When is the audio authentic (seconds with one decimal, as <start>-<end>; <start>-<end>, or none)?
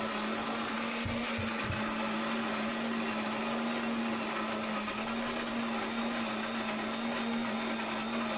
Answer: 0.0-8.4